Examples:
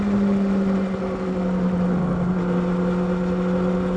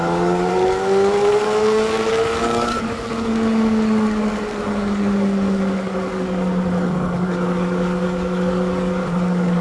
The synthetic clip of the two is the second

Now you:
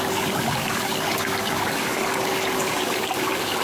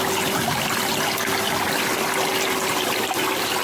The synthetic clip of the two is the first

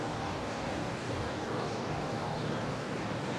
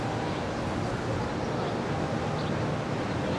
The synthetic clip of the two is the first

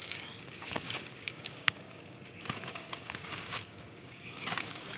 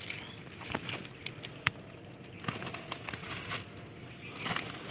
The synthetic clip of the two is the first